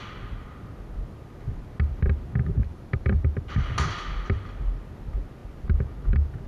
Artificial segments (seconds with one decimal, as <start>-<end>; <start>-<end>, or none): 2.4-3.5